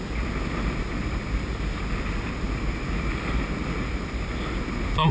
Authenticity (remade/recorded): recorded